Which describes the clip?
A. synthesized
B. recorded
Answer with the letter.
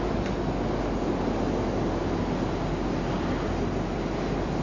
B